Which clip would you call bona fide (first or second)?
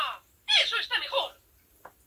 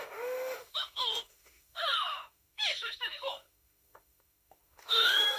first